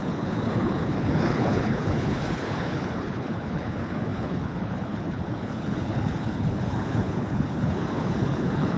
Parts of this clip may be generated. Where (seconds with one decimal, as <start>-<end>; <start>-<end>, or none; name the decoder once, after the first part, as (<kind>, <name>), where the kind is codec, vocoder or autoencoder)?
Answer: 0.0-8.8 (codec, HILCodec)